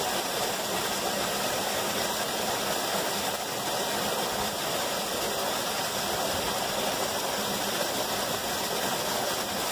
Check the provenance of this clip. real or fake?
real